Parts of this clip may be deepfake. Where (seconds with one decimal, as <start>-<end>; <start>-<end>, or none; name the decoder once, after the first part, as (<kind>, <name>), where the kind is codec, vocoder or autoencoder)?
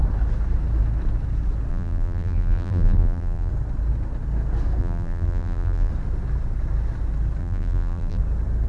1.7-3.5 (vocoder, BigVGAN v2); 4.8-5.9; 7.4-8.2